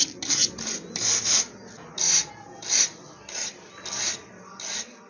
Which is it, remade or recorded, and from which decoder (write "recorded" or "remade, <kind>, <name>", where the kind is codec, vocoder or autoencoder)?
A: recorded